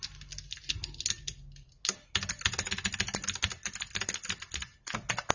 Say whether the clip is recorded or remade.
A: recorded